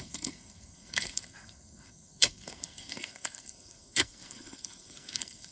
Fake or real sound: fake